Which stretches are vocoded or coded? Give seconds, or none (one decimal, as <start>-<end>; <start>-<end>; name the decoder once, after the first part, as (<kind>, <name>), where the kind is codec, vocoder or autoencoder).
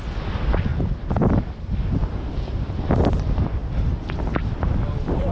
none